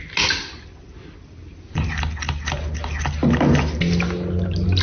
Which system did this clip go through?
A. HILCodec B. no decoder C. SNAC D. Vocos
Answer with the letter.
B